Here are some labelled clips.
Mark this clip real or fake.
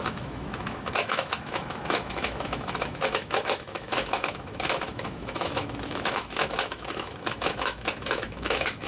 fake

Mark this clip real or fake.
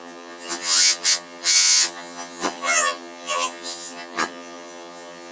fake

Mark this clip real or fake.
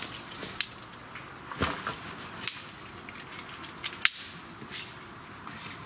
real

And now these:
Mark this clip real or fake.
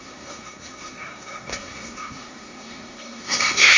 fake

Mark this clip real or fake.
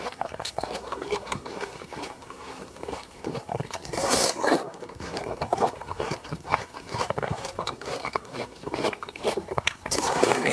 fake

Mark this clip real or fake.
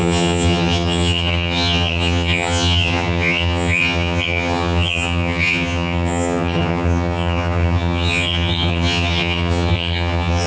fake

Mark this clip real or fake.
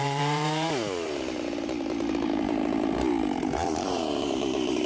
fake